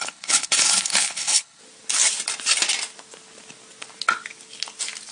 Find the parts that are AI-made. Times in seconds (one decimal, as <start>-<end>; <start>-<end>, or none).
0.0-1.6